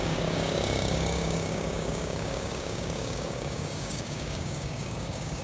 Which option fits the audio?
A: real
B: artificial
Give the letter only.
B